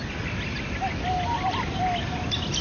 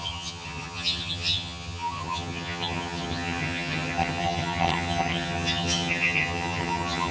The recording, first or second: first